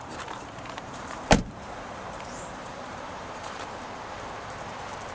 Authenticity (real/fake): fake